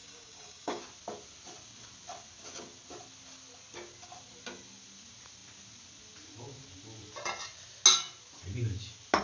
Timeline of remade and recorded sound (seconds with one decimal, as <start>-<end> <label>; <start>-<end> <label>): 0.0-0.8 remade; 0.8-9.2 recorded